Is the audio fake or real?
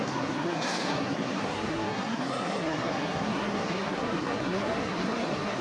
fake